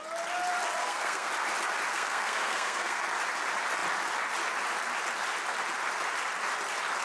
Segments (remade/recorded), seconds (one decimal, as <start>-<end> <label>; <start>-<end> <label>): 0.0-0.8 recorded; 0.8-1.3 remade; 1.3-1.9 recorded; 1.9-3.0 remade; 3.0-7.0 recorded